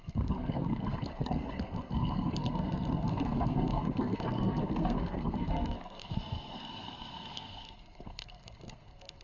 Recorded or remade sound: remade